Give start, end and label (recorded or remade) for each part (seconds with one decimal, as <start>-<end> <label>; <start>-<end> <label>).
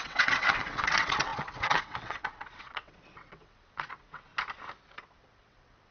0.0-4.3 remade; 4.3-4.8 recorded; 4.8-5.9 remade